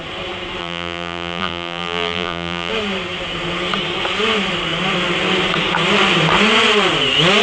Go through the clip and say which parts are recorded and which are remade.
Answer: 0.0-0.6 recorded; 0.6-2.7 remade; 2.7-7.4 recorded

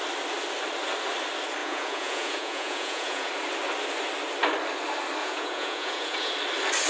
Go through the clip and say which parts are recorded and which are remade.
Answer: 0.0-1.6 recorded; 1.6-3.3 remade; 3.3-5.2 recorded; 5.2-6.3 remade; 6.3-6.9 recorded

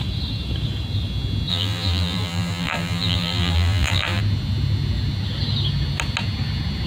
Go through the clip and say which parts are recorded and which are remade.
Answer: 0.0-1.5 recorded; 1.5-4.2 remade; 4.2-6.9 recorded